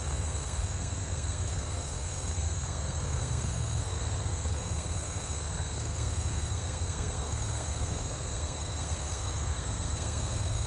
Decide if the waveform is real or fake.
fake